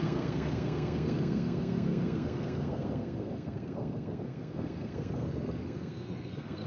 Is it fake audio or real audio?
fake